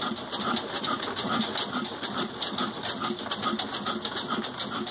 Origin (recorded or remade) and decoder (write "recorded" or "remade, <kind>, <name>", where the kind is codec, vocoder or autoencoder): recorded